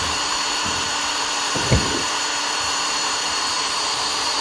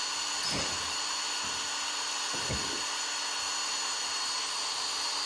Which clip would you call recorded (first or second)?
second